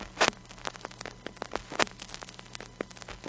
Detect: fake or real real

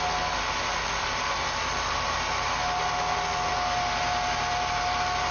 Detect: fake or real real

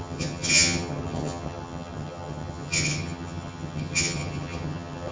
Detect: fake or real fake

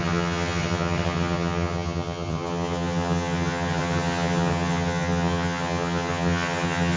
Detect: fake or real fake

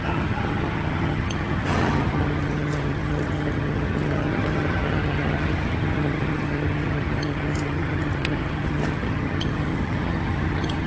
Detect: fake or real fake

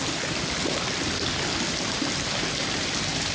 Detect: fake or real real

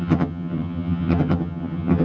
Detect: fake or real fake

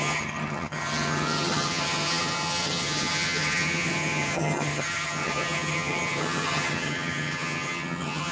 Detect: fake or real fake